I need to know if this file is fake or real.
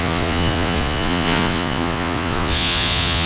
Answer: fake